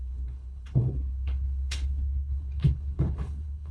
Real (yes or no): no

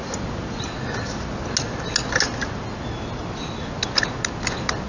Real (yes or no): yes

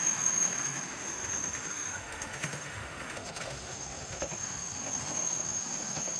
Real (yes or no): no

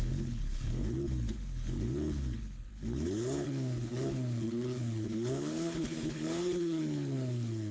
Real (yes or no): no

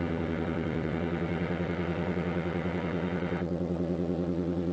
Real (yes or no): no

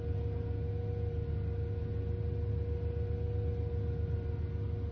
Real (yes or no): yes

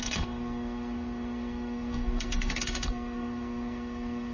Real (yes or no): no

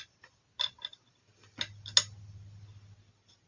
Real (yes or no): yes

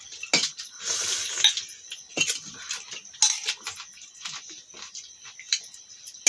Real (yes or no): yes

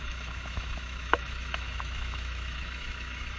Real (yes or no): no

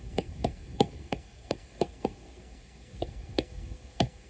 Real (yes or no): no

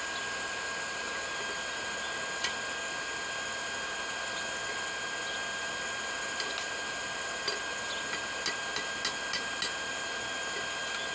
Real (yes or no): yes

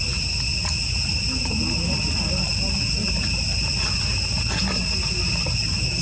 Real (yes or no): yes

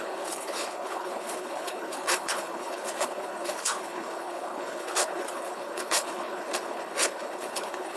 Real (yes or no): no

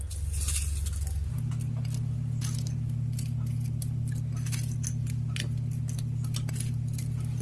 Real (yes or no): yes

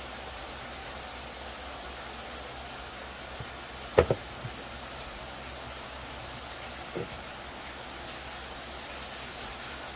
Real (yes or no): yes